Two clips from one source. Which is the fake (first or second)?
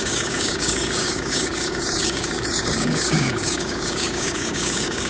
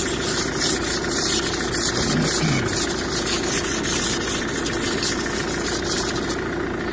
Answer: first